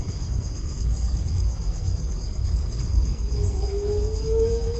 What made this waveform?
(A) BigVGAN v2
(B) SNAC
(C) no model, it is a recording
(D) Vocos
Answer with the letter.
B